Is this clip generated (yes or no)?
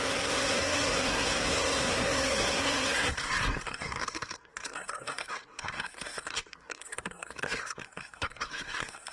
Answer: yes